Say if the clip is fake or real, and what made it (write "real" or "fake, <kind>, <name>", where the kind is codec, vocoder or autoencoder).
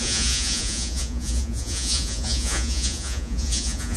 fake, vocoder, Vocos